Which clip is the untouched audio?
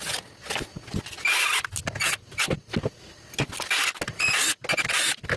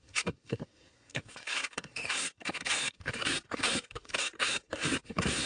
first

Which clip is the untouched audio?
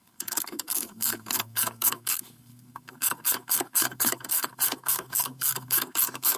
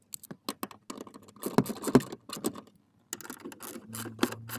second